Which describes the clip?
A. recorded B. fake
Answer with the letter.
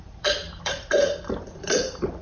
B